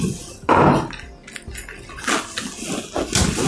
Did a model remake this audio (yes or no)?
no